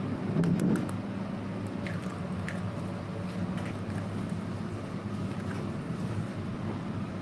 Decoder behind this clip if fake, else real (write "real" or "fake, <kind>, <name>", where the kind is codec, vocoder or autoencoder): real